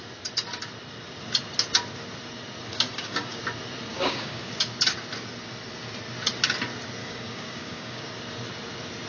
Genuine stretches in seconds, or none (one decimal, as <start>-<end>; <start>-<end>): 0.0-2.7; 3.4-3.9; 4.5-7.0; 8.1-9.1